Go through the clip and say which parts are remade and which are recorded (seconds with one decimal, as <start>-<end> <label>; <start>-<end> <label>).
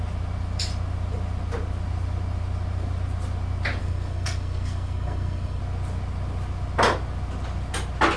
0.0-3.8 recorded; 3.8-5.6 remade; 5.6-8.2 recorded